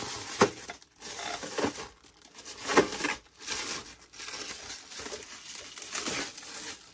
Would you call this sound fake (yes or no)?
no